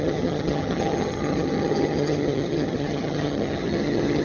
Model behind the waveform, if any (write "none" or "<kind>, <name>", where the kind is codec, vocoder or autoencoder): vocoder, HiFi-GAN